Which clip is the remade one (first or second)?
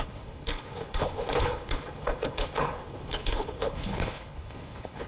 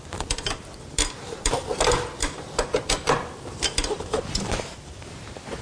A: first